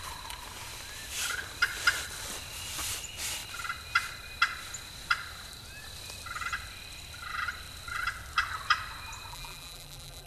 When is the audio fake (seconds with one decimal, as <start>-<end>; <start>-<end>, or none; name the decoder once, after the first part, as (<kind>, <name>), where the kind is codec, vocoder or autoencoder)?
9.3-10.3 (vocoder, BigVGAN v2)